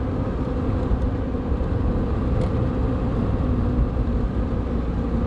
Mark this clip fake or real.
real